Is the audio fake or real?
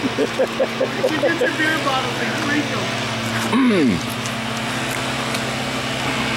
real